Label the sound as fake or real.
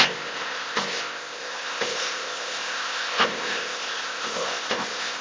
fake